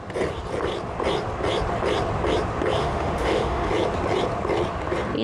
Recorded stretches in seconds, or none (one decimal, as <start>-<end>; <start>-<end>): 0.0-2.8; 3.7-5.2